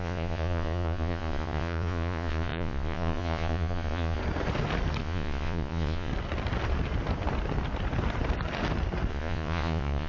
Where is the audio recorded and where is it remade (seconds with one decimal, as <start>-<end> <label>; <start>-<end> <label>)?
0.0-4.2 remade; 4.2-5.0 recorded; 5.0-6.1 remade; 6.1-9.1 recorded; 9.1-10.1 remade